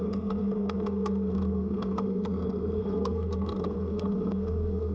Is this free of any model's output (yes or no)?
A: no